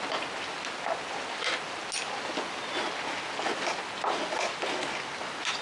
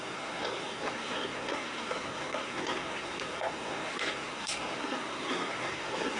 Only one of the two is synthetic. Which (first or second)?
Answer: second